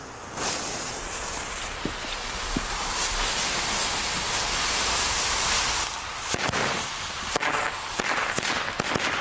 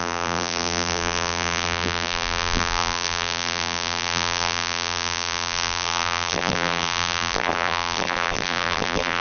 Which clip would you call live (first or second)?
first